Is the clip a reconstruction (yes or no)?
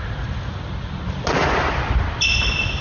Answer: no